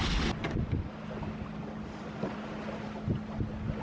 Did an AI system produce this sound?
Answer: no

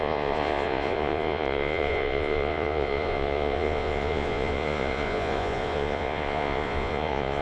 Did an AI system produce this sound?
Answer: yes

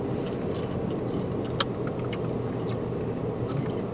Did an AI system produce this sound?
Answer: no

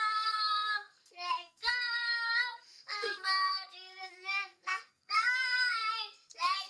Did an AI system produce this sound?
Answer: yes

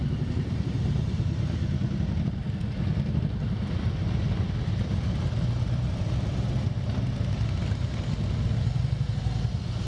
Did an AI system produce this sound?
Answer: no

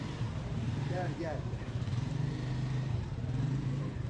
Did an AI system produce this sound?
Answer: yes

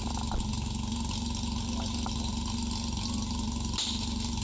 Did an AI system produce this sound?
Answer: no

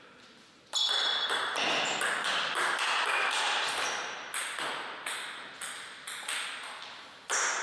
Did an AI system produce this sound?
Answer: no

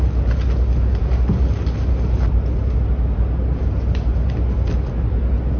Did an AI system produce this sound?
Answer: no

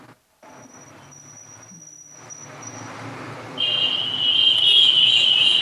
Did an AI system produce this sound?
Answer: no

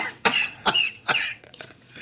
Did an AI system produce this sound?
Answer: yes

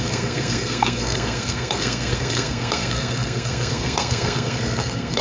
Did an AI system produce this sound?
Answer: yes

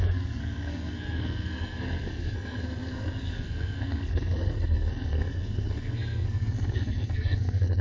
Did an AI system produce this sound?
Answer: yes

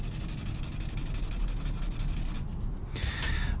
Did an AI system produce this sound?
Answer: no